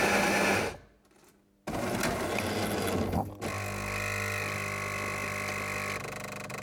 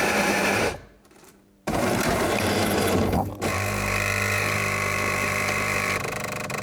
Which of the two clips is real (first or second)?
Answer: first